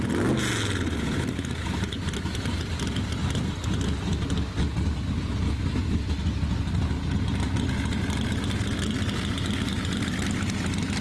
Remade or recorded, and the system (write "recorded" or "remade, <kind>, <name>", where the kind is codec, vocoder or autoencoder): recorded